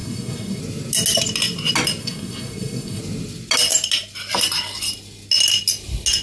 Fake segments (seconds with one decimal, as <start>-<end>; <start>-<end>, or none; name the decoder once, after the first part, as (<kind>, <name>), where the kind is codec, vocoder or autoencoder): 0.0-0.6 (codec, SNAC); 2.0-3.0